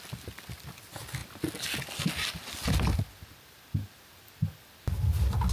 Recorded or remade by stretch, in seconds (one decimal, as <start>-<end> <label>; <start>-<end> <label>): 0.0-5.5 recorded